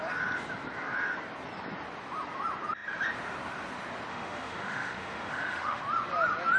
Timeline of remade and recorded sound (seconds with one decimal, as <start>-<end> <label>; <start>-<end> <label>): 0.0-4.1 recorded; 4.1-5.8 remade; 5.8-6.6 recorded